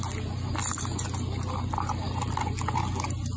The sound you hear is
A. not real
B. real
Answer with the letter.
B